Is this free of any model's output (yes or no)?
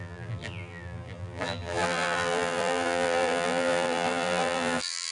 no